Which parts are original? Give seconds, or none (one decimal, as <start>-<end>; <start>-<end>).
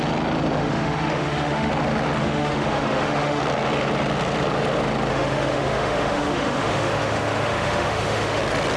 0.0-0.6; 1.7-2.2; 3.4-5.1; 8.4-8.8